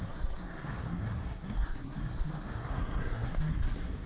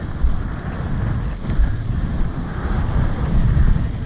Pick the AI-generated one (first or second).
first